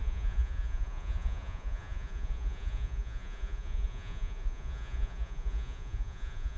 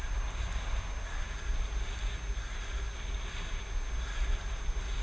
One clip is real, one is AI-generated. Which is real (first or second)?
second